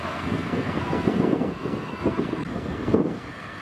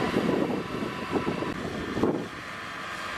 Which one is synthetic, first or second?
first